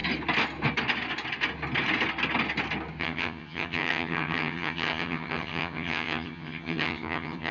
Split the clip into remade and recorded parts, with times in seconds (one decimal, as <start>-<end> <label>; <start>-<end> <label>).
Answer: 0.0-3.0 recorded; 3.0-7.5 remade